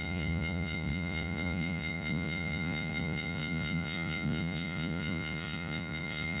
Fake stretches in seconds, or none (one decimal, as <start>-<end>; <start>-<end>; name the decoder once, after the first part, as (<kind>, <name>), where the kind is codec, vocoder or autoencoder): 0.0-6.4 (vocoder, Vocos)